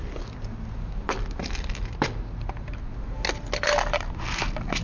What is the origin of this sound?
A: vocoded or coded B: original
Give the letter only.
B